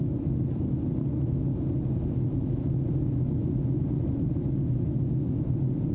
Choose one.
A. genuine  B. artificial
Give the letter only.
A